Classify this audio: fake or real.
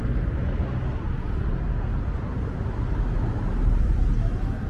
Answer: real